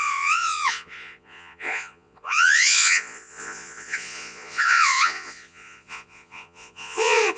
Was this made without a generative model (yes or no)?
no